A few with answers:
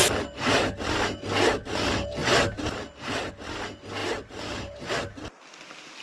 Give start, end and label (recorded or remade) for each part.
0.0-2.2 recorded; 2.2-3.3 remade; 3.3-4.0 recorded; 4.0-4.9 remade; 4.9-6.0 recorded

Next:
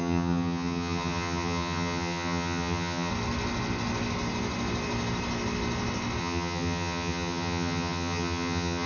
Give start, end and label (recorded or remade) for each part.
0.0-3.1 remade; 3.1-6.2 recorded; 6.2-8.9 remade

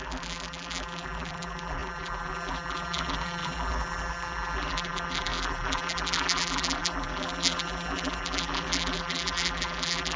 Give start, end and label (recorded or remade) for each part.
0.0-10.2 remade

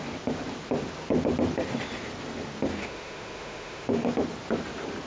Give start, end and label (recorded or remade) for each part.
0.0-2.8 recorded; 2.8-4.1 remade; 4.1-5.1 recorded